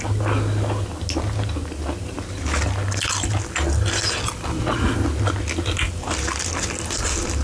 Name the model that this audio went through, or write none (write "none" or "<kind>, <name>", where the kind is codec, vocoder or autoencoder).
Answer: none